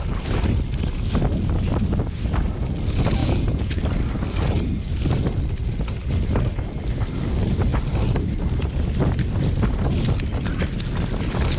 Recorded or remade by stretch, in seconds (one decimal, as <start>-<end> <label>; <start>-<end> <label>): 0.0-3.2 recorded; 3.2-3.8 remade; 3.8-11.6 recorded